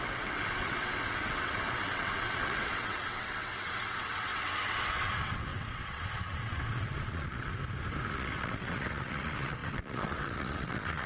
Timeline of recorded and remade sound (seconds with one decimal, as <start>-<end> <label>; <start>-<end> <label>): 0.0-7.5 remade; 7.5-8.1 recorded; 8.1-11.1 remade